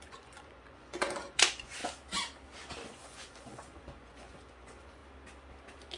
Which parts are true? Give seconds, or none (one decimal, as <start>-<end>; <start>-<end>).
1.8-2.9; 5.0-6.0